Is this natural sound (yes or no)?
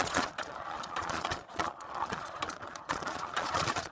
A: no